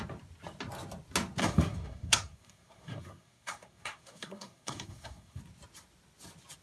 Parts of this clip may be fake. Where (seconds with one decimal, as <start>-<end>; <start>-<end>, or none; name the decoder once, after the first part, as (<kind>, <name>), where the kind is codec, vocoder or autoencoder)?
1.4-5.4 (codec, SNAC)